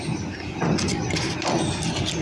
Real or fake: real